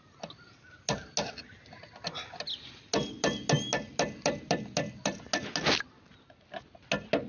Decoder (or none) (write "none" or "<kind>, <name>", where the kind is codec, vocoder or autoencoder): none